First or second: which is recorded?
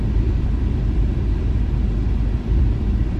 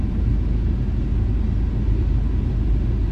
second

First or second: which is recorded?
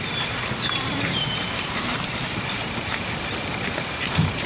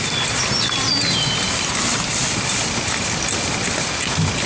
second